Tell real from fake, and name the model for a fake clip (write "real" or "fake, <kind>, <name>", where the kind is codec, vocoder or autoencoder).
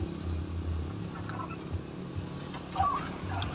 real